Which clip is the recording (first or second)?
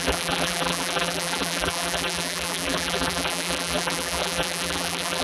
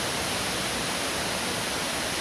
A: second